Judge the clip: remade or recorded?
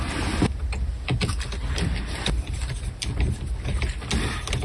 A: recorded